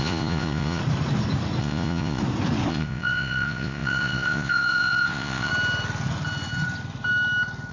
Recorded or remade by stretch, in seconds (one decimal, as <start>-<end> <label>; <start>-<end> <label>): 0.0-0.8 remade; 0.8-1.6 recorded; 1.6-2.2 remade; 2.2-2.7 recorded; 2.7-5.5 remade; 5.5-7.7 recorded